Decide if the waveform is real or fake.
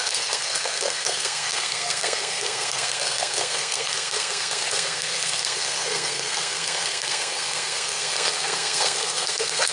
fake